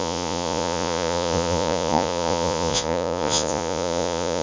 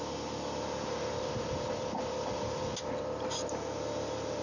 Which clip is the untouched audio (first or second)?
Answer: second